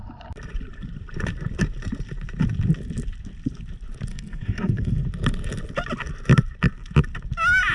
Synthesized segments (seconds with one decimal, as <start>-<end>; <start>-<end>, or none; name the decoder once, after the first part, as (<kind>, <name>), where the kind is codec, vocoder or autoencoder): 4.1-5.0 (codec, SNAC)